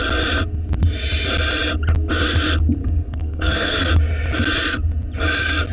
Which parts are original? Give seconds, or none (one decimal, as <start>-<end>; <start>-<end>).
0.0-2.8; 3.9-5.7